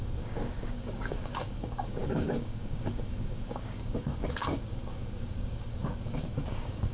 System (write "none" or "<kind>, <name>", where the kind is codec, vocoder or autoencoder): codec, DAC